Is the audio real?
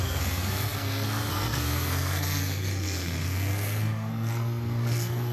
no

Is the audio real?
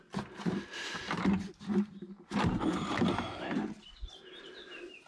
yes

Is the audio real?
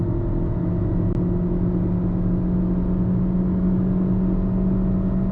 yes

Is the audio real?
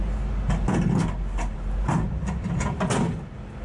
yes